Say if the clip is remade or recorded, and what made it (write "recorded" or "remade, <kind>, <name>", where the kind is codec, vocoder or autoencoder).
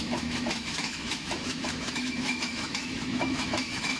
remade, autoencoder, DAC-VAE